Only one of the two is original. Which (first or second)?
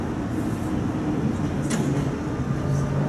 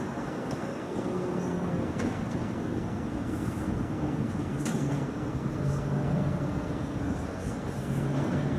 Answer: first